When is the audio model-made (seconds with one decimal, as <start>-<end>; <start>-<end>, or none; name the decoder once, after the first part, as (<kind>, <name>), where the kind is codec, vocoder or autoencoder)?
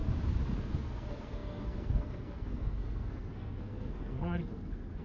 0.6-5.0 (codec, SNAC)